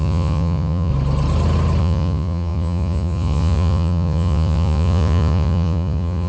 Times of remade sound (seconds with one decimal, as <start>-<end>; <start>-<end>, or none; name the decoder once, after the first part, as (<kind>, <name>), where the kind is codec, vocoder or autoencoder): 0.0-0.9 (vocoder, Vocos); 1.8-6.3